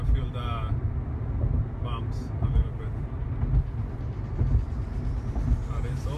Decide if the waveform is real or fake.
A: real